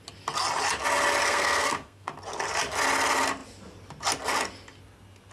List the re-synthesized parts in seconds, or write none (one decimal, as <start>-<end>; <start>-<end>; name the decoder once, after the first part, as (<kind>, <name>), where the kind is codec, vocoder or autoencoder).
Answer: 1.2-2.1 (codec, SNAC)